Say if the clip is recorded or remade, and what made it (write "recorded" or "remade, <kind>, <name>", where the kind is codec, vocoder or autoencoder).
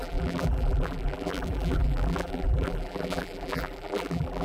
remade, vocoder, BigVGAN v2